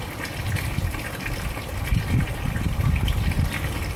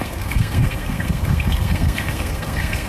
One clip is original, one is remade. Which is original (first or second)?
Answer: first